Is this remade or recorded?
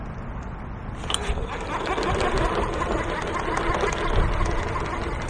recorded